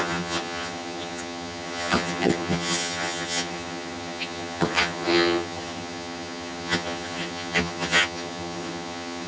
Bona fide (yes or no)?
no